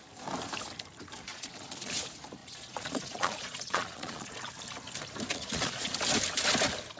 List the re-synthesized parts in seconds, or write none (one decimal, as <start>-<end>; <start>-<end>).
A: 1.3-1.9; 2.4-4.5; 5.3-5.9